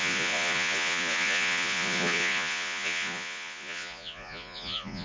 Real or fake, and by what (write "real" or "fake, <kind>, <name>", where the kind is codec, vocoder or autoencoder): fake, vocoder, Vocos